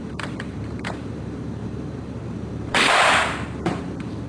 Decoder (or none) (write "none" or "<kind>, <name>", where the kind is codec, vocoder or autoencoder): vocoder, BigVGAN v2